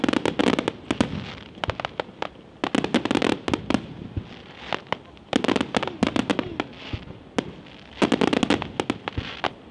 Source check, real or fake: real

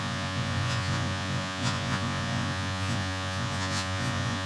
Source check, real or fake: fake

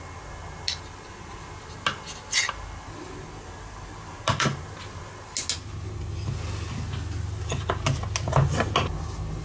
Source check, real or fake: real